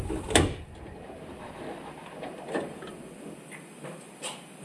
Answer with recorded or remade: recorded